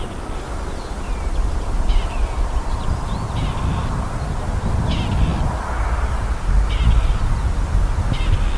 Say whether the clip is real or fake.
real